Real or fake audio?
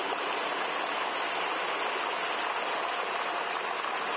real